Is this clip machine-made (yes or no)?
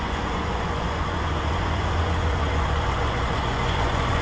yes